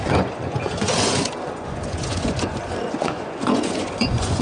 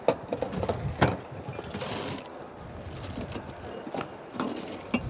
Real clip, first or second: second